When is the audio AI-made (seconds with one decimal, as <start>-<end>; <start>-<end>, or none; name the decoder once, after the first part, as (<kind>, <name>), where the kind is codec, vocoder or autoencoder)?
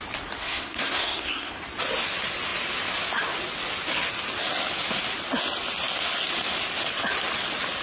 0.4-1.5 (codec, SNAC)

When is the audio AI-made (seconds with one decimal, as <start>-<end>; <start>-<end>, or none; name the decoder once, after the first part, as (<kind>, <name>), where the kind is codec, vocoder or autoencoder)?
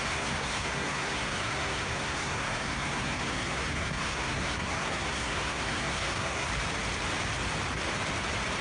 0.0-6.5 (codec, SNAC)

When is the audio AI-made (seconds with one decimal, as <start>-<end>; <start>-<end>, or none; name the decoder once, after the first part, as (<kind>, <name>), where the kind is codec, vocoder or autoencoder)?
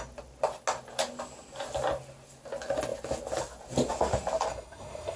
4.5-5.2 (codec, SNAC)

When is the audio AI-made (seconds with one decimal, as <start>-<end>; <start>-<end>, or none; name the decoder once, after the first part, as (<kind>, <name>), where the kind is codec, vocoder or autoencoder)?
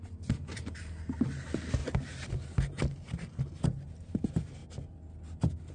none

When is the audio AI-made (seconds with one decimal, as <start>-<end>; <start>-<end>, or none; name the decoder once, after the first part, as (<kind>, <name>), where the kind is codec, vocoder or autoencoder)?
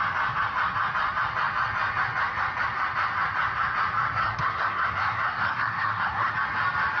4.2-6.3 (codec, SNAC)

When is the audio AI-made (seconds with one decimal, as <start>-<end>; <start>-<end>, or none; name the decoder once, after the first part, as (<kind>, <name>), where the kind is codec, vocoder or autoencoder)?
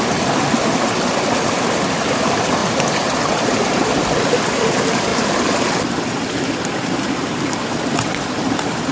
none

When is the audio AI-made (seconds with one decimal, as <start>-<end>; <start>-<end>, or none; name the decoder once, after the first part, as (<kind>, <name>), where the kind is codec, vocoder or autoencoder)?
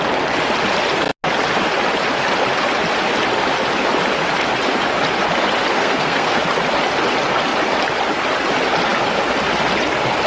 5.7-6.4 (codec, SNAC)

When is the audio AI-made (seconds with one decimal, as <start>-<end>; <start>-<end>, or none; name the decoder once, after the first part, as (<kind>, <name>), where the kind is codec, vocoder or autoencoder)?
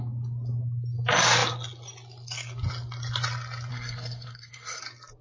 3.7-4.8 (codec, SNAC)